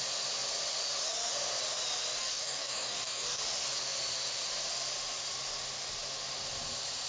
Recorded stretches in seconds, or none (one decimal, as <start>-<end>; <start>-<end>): 0.0-2.2; 3.4-7.1